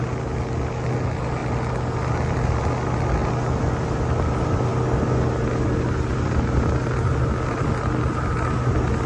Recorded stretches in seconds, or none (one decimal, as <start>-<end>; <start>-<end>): 0.0-9.1